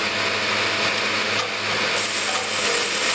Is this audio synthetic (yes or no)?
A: no